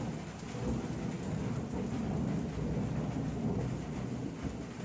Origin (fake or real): real